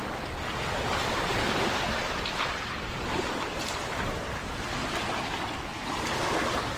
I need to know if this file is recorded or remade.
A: recorded